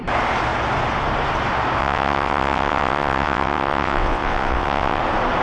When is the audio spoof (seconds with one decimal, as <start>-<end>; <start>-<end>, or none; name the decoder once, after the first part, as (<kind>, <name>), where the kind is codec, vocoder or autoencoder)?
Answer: 1.8-5.0 (vocoder, WaveNeXt)